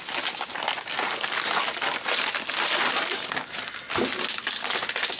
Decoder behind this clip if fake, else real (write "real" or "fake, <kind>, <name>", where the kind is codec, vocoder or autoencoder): real